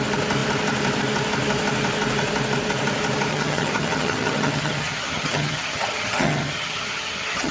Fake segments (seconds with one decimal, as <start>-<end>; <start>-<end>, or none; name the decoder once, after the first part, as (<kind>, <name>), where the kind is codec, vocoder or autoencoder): 3.3-7.5 (vocoder, HiFi-GAN)